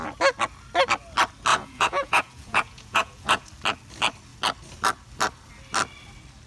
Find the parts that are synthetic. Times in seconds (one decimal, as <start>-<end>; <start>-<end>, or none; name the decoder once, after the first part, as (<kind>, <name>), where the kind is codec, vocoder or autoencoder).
1.5-3.5 (vocoder, Vocos)